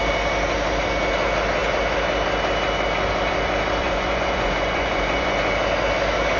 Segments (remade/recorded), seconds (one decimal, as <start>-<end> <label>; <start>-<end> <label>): 0.0-3.8 recorded; 3.8-5.5 remade; 5.5-6.4 recorded